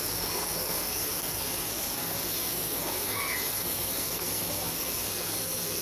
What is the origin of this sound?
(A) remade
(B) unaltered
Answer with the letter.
A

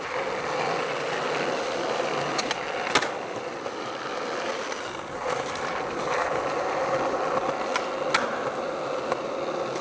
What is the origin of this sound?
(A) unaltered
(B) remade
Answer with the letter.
A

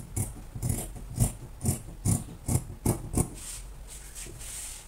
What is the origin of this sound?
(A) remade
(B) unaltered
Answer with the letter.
B